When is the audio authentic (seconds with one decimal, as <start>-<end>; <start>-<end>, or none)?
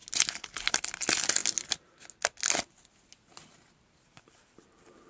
0.0-0.7; 1.4-4.1